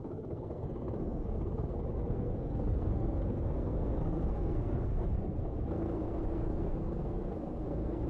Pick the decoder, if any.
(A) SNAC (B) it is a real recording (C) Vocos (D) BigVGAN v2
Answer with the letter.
A